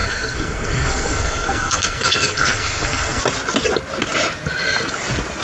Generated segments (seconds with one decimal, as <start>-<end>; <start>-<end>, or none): 0.0-3.2